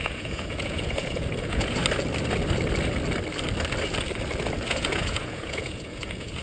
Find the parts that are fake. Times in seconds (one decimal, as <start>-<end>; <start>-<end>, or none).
0.0-1.8; 4.7-6.4